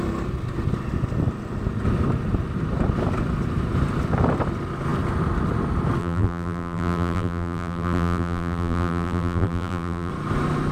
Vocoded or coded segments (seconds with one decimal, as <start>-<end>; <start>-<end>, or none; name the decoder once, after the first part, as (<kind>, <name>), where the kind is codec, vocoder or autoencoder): 6.0-10.1 (vocoder, BigVGAN v2)